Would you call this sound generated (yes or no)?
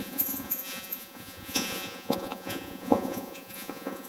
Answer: yes